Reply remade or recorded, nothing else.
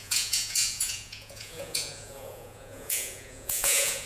remade